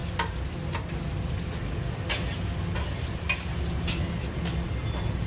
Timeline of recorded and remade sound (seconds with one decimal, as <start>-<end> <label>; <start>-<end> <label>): 0.0-5.3 recorded